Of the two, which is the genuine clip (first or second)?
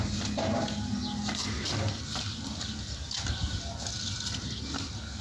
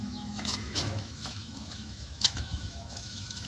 first